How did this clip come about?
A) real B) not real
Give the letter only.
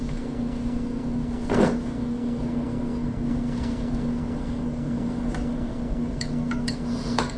B